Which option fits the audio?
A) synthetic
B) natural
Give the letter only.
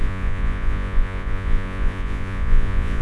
A